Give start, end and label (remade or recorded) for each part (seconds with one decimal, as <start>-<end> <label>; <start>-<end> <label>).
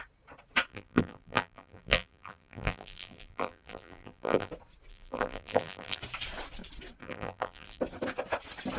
0.0-0.7 recorded; 0.7-4.5 remade; 4.5-4.9 recorded; 4.9-6.0 remade; 6.0-7.0 recorded; 7.0-7.8 remade; 7.8-8.8 recorded